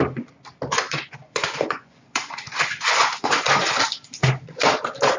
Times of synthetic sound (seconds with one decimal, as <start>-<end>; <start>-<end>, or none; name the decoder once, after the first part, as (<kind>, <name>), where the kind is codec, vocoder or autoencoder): 0.7-3.8 (vocoder, Vocos)